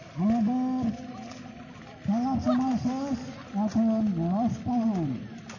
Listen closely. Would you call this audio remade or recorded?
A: recorded